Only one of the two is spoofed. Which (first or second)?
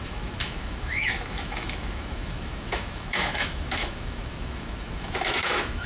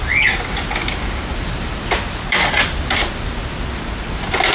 first